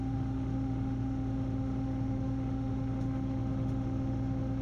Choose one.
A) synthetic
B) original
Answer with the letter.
A